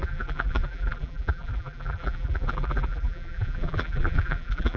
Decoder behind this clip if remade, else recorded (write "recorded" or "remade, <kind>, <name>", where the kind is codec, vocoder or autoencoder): remade, vocoder, BigVGAN v2